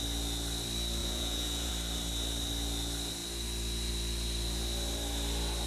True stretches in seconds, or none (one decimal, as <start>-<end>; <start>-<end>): 0.0-1.0; 1.7-5.7